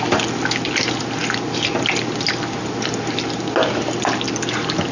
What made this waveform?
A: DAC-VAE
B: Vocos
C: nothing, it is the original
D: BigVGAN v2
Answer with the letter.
C